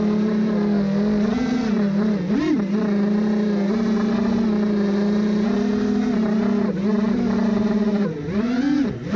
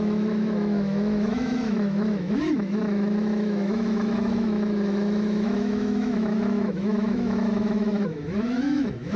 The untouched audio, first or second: first